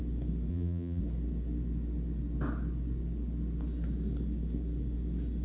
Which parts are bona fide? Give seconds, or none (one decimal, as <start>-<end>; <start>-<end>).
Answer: 0.0-0.5; 1.0-5.4